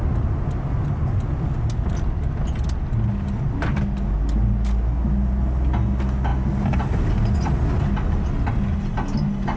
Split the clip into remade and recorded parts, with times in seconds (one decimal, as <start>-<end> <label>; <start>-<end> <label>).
0.0-9.6 recorded